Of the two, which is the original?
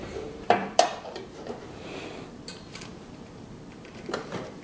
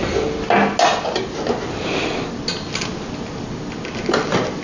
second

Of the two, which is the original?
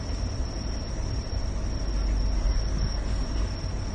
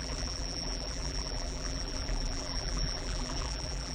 first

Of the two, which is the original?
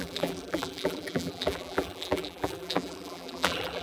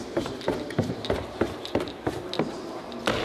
second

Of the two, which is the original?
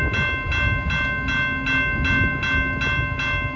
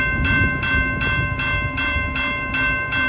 first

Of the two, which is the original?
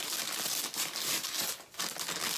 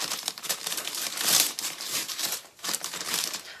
first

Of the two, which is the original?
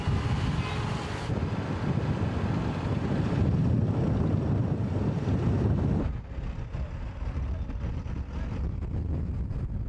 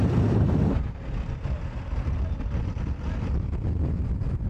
first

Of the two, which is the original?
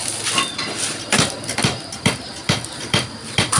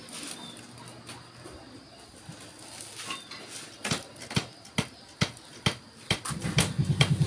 second